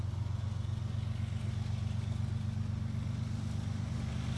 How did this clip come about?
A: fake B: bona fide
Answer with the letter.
B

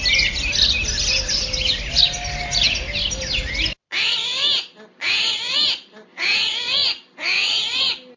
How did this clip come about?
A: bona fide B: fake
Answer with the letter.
A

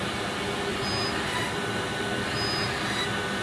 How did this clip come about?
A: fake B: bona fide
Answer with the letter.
B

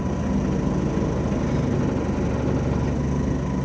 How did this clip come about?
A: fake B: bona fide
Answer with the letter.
B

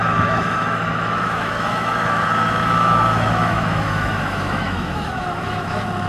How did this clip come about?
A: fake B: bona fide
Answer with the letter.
A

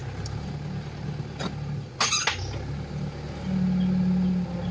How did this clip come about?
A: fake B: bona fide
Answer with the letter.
B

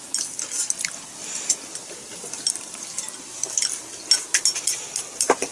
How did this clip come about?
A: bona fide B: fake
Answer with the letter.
A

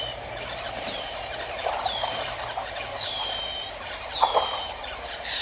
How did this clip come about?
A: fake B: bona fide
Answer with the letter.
A